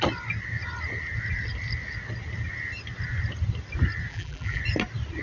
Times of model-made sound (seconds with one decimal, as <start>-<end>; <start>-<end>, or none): 4.1-4.6